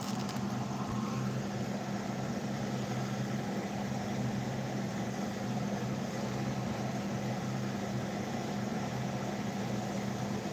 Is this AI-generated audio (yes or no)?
no